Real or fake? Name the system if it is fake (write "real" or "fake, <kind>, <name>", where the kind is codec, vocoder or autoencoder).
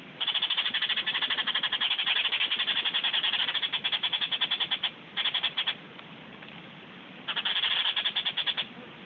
real